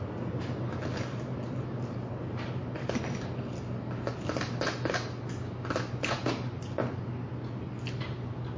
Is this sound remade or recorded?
recorded